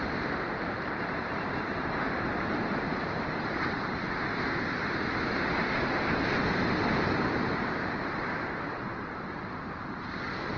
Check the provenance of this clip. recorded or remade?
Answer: remade